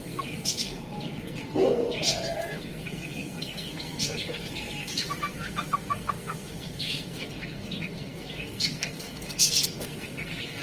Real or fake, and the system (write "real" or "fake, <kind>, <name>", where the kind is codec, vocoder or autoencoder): fake, codec, SNAC